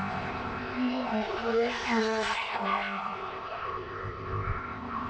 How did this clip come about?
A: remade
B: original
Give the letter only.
A